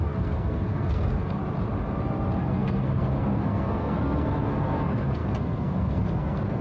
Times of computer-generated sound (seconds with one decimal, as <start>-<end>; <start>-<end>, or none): 0.0-1.4; 2.4-6.6